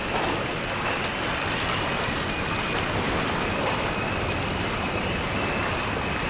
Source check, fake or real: real